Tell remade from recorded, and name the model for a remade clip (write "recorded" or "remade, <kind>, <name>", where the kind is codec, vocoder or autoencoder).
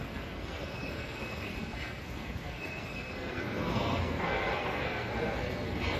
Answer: remade, codec, SNAC